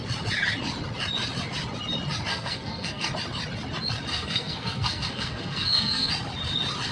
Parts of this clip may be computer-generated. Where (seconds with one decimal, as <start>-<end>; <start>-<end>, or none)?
2.3-3.1; 4.1-6.1